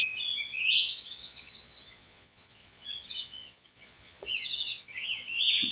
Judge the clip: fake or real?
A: fake